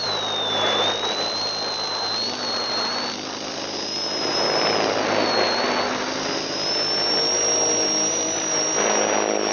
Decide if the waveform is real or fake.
real